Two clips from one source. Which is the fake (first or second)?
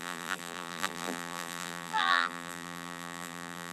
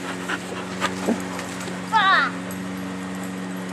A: first